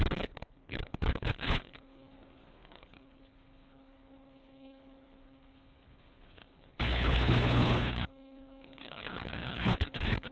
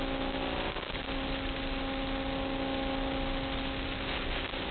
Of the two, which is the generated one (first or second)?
first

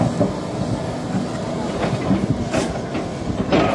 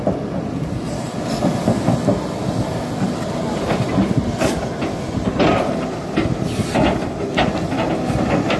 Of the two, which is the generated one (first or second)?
second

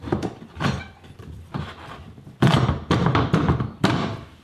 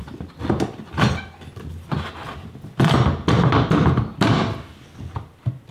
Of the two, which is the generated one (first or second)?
first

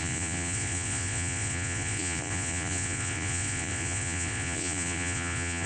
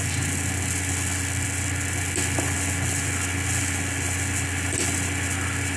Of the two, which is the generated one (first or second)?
first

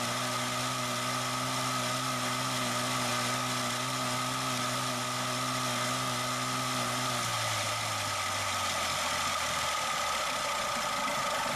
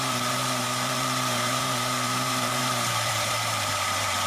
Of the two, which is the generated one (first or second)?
second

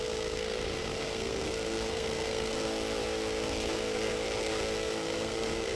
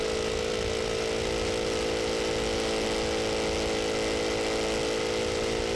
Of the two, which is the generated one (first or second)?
first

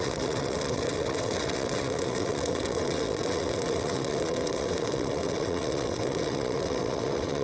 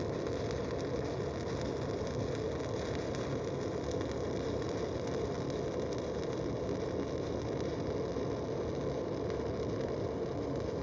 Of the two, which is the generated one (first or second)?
first